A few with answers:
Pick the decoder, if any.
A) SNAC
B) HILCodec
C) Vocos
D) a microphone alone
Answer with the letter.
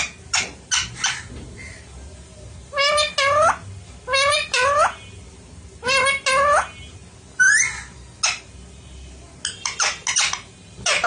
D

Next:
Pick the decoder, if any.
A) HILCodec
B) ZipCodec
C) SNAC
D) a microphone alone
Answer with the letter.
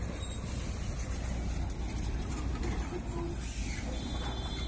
D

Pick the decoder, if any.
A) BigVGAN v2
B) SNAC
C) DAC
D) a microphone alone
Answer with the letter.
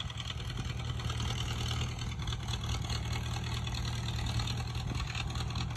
D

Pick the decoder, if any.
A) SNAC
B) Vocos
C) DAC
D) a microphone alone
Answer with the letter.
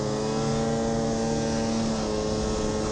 D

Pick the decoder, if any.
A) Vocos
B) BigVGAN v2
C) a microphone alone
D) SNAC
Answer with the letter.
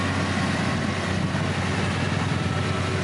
C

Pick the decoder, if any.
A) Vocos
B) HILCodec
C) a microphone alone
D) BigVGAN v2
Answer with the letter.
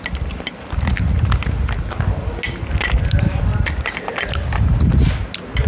C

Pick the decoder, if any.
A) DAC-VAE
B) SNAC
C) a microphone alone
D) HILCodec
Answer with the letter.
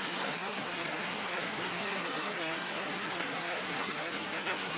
B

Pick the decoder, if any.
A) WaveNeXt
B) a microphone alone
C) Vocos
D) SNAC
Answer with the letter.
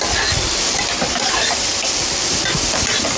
B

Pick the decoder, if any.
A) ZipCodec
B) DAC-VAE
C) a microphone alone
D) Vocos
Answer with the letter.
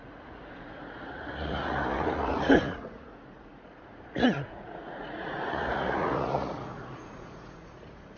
D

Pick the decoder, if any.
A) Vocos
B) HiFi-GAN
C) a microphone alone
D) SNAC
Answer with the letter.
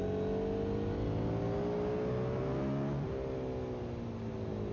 C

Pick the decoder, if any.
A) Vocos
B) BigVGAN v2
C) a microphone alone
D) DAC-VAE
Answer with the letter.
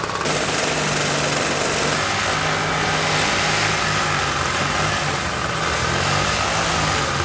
C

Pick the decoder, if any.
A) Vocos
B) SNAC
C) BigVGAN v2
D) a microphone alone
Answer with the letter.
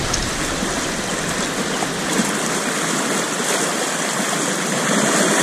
C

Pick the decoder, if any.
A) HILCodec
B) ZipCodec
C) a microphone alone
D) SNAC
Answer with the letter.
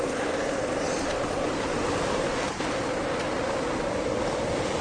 C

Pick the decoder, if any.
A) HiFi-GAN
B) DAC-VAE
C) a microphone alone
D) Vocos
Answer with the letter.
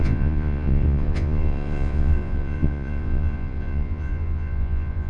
D